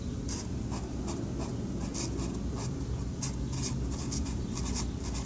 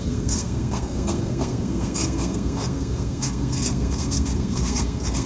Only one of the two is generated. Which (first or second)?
second